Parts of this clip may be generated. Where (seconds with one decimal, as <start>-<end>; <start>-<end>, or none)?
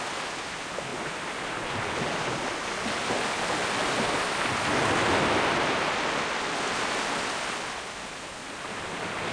none